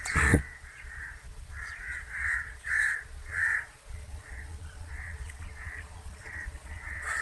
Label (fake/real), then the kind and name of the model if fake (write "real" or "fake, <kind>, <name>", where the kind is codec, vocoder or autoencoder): fake, vocoder, Vocos